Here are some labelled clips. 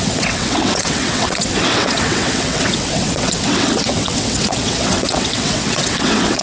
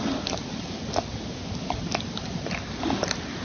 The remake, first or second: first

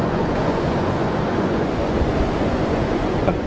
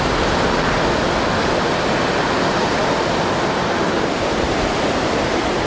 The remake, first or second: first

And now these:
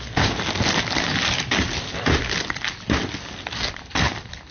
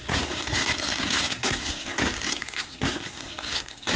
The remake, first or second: second